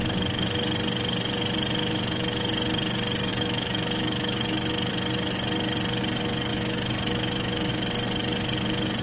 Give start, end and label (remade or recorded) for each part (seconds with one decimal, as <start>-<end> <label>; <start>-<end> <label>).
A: 0.0-1.8 recorded; 1.8-2.5 remade; 2.5-3.3 recorded; 3.3-4.9 remade; 4.9-6.5 recorded; 6.5-7.7 remade; 7.7-9.0 recorded